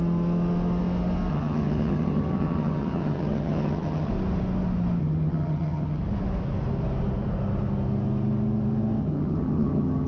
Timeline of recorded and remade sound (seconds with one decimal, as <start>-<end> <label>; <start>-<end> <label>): 0.0-1.3 recorded; 1.3-4.1 remade; 4.1-5.0 recorded; 5.0-6.0 remade; 6.0-9.0 recorded; 9.0-10.1 remade